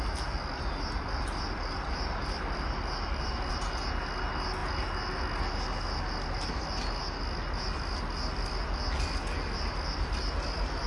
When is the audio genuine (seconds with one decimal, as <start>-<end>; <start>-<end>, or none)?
0.0-0.5; 3.5-10.9